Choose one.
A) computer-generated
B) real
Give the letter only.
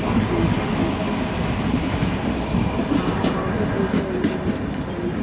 B